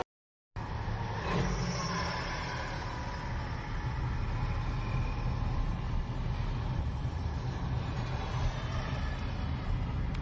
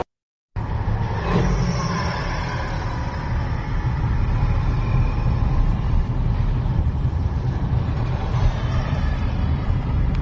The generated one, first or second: second